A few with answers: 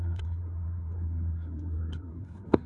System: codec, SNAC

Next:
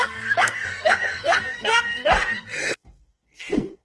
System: codec, SNAC